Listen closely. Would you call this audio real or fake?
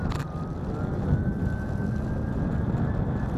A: real